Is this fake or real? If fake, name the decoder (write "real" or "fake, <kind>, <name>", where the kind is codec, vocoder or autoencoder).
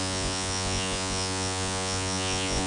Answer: fake, vocoder, Vocos